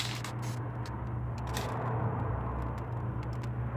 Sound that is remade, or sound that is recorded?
recorded